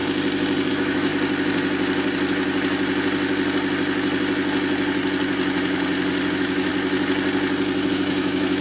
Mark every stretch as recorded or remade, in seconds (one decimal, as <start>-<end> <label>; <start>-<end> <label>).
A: 0.0-0.7 recorded; 0.7-1.1 remade; 1.1-6.3 recorded; 6.3-6.7 remade; 6.7-7.9 recorded; 7.9-8.6 remade